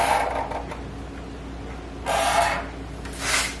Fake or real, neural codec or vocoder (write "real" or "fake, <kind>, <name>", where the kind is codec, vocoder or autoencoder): real